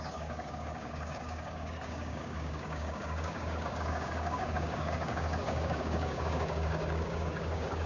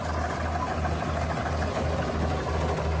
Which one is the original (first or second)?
second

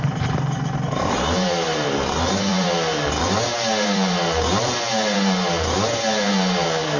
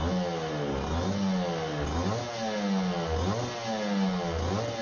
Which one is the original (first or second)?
second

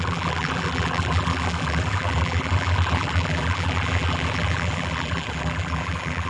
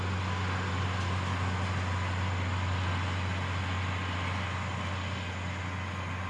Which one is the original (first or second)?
second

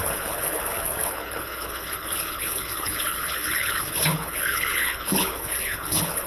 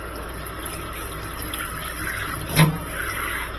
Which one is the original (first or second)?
second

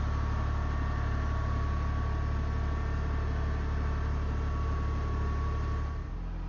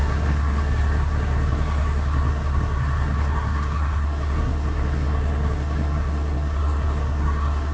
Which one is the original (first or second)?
first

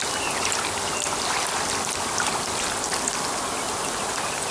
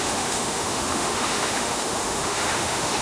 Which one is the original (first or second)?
first